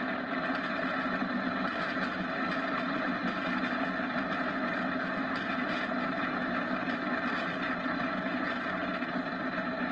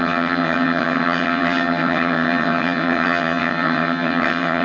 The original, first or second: first